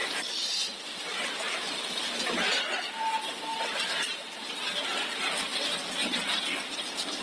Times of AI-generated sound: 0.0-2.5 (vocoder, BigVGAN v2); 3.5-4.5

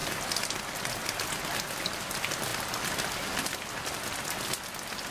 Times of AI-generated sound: 1.8-5.1 (vocoder, BigVGAN v2)

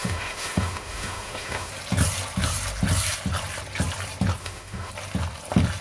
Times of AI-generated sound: 0.0-1.7 (autoencoder, DAC-VAE); 4.4-4.9

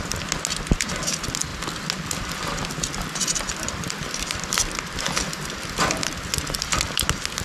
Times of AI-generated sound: none